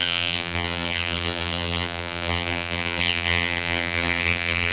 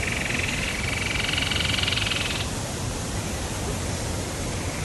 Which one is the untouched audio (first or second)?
second